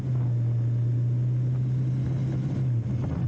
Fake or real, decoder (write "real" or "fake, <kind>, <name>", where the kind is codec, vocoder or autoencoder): real